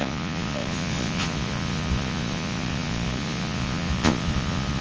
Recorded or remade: remade